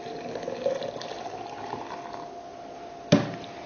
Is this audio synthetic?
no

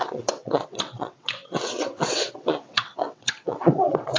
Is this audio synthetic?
yes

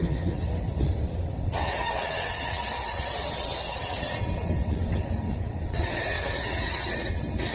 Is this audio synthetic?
yes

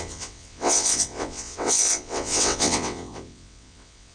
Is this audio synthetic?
yes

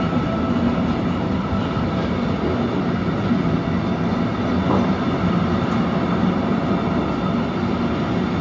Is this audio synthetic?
no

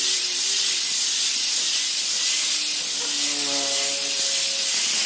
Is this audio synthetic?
no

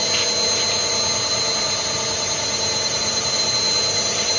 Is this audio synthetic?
no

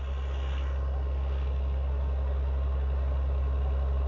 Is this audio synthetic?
no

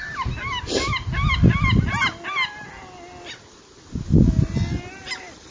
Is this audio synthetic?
no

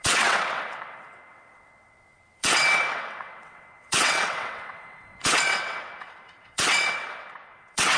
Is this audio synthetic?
yes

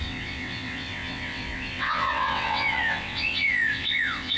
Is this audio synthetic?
yes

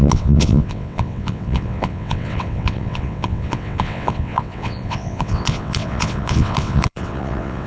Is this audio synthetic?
yes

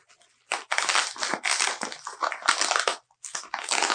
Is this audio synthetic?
no